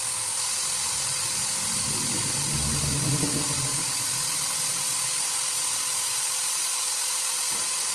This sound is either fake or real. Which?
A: real